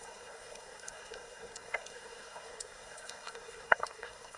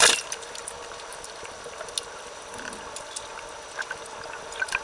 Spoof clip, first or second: first